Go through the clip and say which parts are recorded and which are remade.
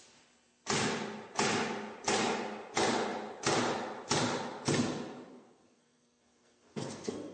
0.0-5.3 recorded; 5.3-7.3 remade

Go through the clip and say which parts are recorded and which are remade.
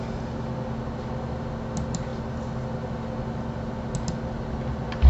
0.0-5.1 recorded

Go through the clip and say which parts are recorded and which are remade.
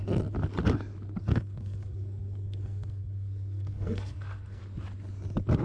0.0-1.2 recorded; 1.2-4.6 remade; 4.6-5.6 recorded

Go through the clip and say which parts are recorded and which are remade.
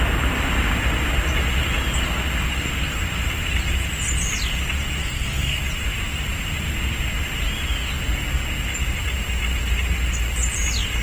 0.0-5.0 recorded; 5.0-5.6 remade; 5.6-11.0 recorded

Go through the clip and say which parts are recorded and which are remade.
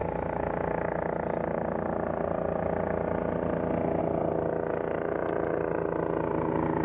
0.0-6.8 recorded